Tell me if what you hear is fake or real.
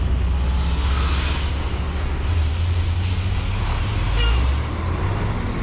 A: real